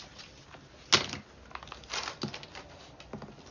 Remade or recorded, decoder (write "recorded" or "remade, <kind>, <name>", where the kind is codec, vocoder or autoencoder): recorded